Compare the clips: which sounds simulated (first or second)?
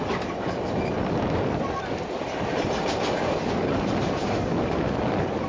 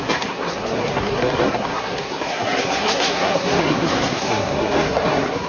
second